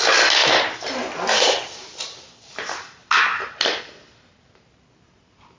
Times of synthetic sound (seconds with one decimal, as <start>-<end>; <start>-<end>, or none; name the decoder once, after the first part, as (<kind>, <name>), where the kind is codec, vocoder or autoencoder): none